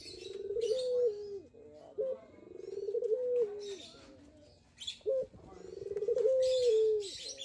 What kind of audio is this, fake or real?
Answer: real